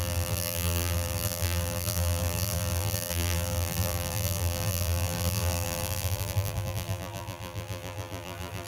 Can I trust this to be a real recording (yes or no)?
no